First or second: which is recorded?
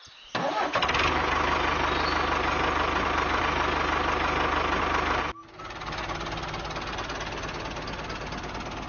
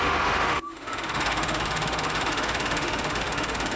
first